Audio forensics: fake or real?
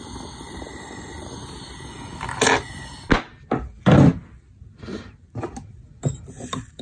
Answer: real